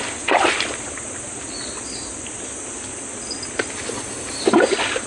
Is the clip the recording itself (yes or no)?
yes